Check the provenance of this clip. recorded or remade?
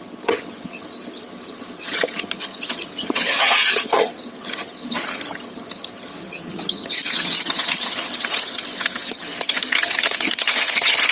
remade